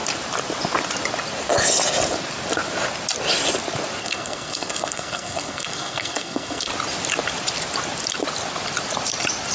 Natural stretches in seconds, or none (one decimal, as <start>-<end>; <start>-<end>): 0.0-4.0; 6.7-9.5